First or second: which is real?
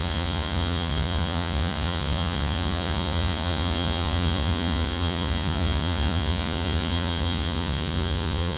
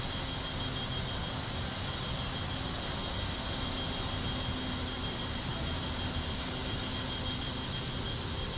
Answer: second